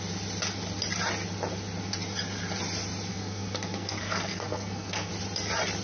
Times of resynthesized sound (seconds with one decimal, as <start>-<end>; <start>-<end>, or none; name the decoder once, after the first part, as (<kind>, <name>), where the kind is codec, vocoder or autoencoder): 3.1-5.1 (codec, SNAC)